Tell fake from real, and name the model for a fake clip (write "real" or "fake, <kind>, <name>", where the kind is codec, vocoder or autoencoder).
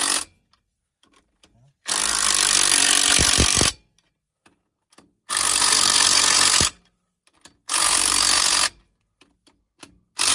real